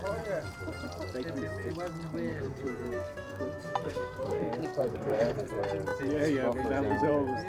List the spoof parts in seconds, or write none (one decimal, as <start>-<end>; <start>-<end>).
2.3-5.5